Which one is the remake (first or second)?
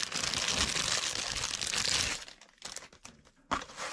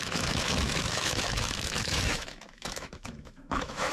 second